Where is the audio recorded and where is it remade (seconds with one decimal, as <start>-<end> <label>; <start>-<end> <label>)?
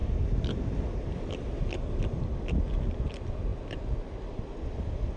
0.0-5.2 recorded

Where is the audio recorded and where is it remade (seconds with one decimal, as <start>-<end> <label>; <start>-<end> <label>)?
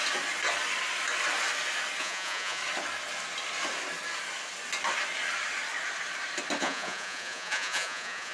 0.0-2.0 recorded; 2.0-2.6 remade; 2.6-6.6 recorded; 6.6-8.3 remade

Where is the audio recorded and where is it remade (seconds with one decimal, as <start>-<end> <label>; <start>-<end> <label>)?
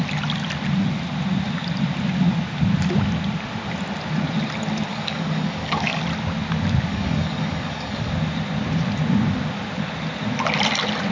0.0-4.9 recorded; 4.9-6.0 remade; 6.0-6.9 recorded; 6.9-8.1 remade; 8.1-11.1 recorded